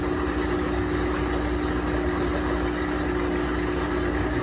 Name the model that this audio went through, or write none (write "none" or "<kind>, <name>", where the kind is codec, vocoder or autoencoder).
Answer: none